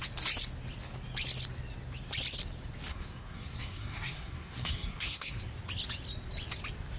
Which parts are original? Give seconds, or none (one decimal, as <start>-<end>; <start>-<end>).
0.0-2.9; 5.4-7.0